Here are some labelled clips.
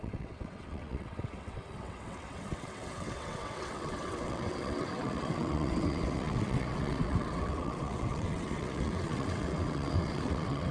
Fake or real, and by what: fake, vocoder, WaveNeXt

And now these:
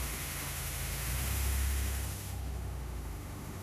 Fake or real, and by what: fake, autoencoder, DAC-VAE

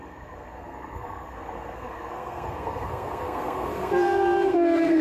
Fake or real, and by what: fake, codec, SNAC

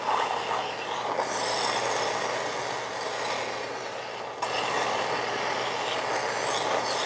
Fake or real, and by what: real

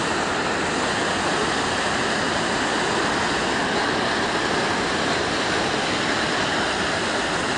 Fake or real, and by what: real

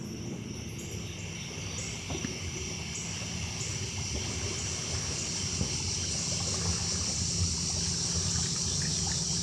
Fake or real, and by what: real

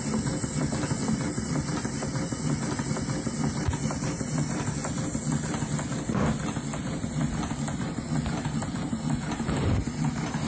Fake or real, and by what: real